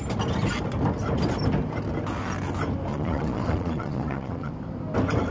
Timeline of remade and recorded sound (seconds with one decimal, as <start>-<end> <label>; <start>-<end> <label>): 0.0-2.9 recorded; 2.9-4.5 remade; 4.5-5.3 recorded